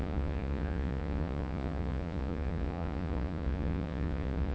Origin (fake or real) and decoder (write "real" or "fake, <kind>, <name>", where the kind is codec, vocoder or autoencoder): fake, vocoder, Vocos